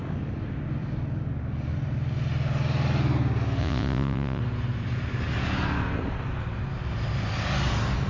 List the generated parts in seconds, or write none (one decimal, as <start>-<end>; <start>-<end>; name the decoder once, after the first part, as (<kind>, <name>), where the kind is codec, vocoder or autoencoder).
3.6-4.4 (vocoder, Vocos)